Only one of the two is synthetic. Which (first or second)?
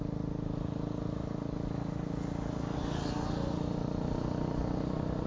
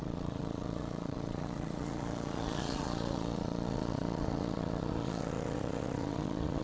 second